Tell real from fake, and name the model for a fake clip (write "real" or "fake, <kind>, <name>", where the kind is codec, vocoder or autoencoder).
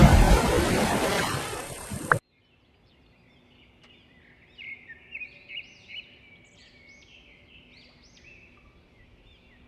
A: real